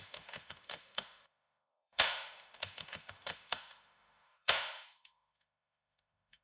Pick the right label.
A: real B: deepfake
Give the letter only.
B